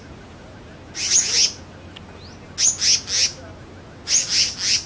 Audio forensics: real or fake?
real